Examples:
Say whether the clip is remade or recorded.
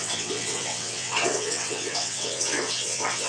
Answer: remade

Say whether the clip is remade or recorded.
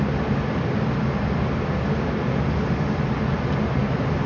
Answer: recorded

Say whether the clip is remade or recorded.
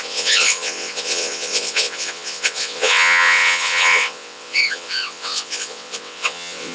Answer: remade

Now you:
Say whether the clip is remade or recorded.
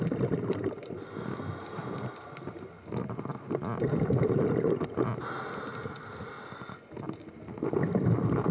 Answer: recorded